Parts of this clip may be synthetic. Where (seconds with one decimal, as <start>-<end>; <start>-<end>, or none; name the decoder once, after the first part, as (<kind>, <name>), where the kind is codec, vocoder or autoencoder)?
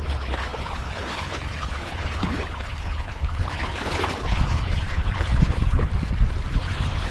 0.0-5.9 (codec, HILCodec); 6.5-7.1